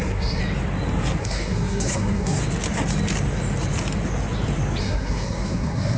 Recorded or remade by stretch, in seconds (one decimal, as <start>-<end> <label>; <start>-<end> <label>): 0.0-0.4 remade; 0.4-1.2 recorded; 1.2-2.4 remade; 2.4-4.8 recorded; 4.8-6.0 remade